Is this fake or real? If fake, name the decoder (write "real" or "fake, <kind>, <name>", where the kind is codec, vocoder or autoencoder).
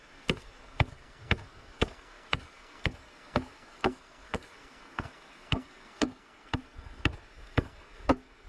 fake, codec, SNAC